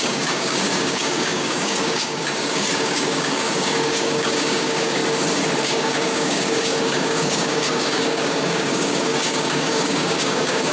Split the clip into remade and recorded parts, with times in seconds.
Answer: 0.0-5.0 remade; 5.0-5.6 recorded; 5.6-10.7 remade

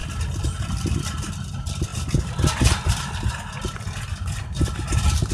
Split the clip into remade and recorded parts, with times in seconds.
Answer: 0.0-5.3 recorded

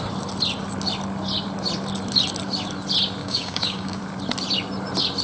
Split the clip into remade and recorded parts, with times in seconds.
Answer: 0.0-3.2 recorded; 3.2-4.0 remade; 4.0-5.2 recorded

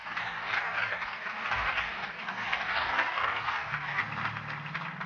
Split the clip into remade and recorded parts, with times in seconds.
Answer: 0.0-4.0 remade; 4.0-5.1 recorded

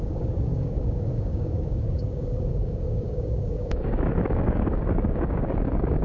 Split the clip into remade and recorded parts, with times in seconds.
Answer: 0.0-6.0 remade

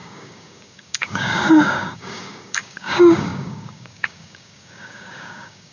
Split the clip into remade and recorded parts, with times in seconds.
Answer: 0.0-5.7 remade

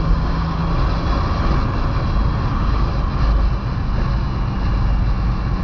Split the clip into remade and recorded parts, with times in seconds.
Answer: 0.0-0.6 remade; 0.6-2.5 recorded; 2.5-2.9 remade; 2.9-5.6 recorded